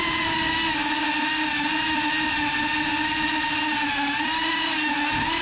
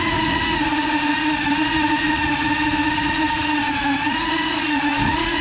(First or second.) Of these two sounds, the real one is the first